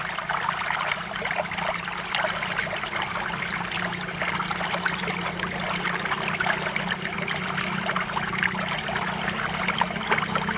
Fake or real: real